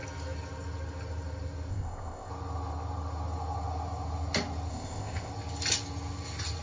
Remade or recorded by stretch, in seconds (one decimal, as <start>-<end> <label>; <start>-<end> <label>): 0.0-1.7 recorded; 1.7-2.3 remade; 2.3-4.7 recorded; 4.7-5.3 remade; 5.3-6.6 recorded